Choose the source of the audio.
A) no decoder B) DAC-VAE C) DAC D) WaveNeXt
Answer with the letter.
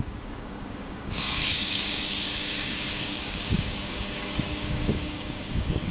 C